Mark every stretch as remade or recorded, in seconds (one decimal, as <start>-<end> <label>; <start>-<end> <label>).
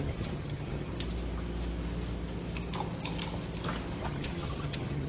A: 0.0-0.9 remade; 0.9-4.0 recorded; 4.0-5.1 remade